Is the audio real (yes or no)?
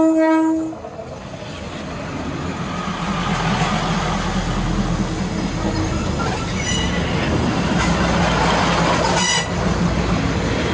yes